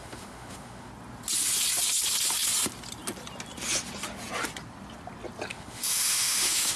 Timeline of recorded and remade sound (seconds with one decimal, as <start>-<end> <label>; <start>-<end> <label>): 0.0-0.9 remade; 0.9-5.5 recorded; 5.5-6.8 remade